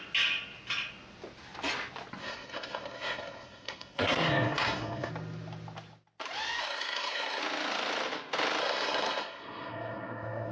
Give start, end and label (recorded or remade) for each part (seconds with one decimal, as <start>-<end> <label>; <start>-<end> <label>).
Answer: 0.0-2.2 recorded; 2.2-5.1 remade; 5.1-6.6 recorded; 6.6-7.4 remade; 7.4-8.6 recorded; 8.6-10.5 remade